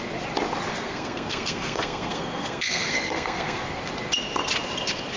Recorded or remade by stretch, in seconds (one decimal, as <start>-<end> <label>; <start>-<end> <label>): 0.0-0.7 recorded; 0.7-3.8 remade; 3.8-5.2 recorded